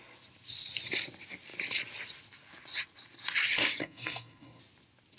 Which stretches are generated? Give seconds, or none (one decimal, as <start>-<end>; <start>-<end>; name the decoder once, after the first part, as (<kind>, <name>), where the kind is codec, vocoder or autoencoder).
3.8-4.6 (codec, SNAC)